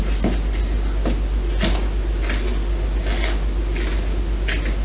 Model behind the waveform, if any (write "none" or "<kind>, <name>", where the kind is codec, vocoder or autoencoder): none